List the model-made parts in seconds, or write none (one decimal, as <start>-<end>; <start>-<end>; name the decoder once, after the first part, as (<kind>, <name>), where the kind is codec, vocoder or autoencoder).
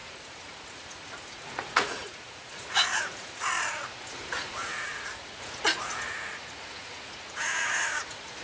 0.0-8.4 (vocoder, Vocos)